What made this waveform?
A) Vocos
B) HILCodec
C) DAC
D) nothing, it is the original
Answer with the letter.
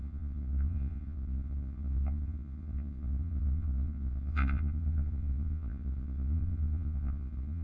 A